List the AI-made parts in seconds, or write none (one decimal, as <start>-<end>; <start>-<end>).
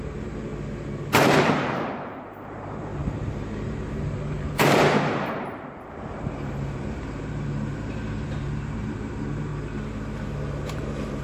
0.0-0.5; 1.2-9.5; 10.7-11.2